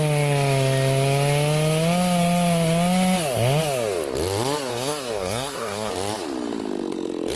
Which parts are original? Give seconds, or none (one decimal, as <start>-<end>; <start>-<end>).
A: 0.0-4.7; 5.9-7.4